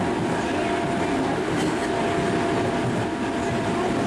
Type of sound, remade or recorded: recorded